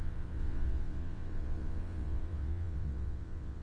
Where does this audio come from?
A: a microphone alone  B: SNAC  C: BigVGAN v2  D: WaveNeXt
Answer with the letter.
D